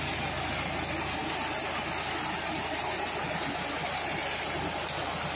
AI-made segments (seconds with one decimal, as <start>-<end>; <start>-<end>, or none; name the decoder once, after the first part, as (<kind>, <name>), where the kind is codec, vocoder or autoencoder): none